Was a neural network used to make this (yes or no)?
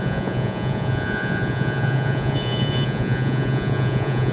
yes